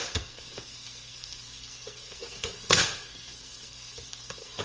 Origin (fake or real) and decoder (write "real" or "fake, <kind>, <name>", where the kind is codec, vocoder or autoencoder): fake, codec, SNAC